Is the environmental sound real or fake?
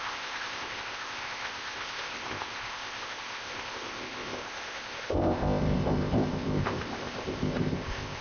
fake